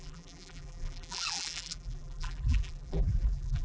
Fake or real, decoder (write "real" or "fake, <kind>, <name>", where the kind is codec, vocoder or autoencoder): fake, vocoder, BigVGAN v2